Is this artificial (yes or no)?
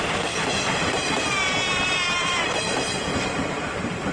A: yes